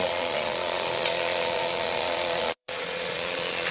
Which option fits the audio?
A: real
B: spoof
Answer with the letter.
B